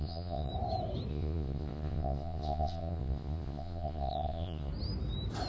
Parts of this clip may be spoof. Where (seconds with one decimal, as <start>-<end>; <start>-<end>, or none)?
0.0-0.5; 1.1-4.7

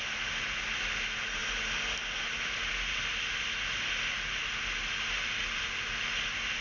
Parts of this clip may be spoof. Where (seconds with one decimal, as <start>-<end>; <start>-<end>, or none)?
none

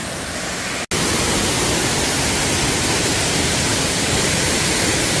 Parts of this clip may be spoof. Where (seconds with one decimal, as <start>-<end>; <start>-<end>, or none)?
3.7-4.4